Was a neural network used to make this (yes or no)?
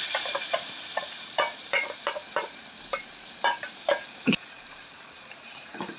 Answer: yes